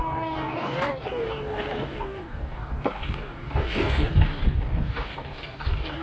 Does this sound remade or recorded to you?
remade